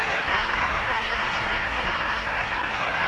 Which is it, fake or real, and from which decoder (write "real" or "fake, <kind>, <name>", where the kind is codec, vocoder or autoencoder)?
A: fake, codec, SNAC